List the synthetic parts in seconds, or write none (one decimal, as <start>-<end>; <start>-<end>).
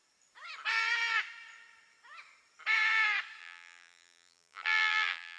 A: 3.4-5.4